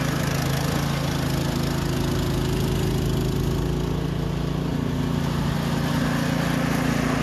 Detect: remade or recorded recorded